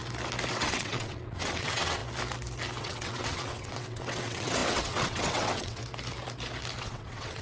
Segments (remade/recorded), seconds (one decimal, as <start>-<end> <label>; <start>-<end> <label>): 0.0-0.5 recorded; 0.5-2.0 remade; 2.0-2.8 recorded; 2.8-5.8 remade; 5.8-6.8 recorded; 6.8-7.4 remade